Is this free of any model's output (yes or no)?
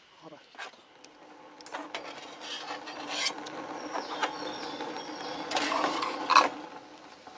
yes